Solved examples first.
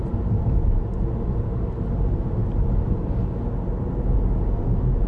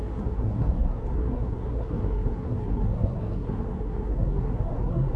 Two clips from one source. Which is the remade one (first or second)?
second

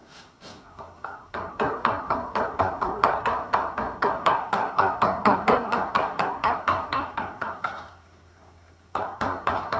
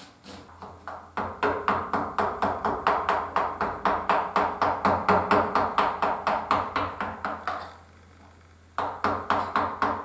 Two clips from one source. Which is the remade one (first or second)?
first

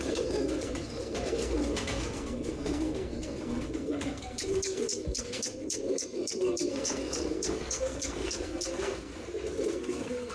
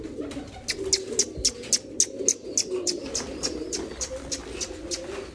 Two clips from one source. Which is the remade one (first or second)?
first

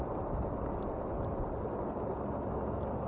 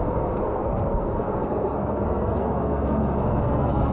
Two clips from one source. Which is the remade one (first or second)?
second